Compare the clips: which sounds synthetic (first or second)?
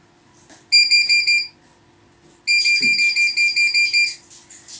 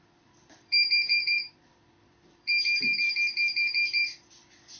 second